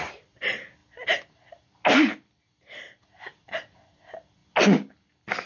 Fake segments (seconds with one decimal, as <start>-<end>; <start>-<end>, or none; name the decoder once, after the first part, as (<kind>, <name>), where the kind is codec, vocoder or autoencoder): none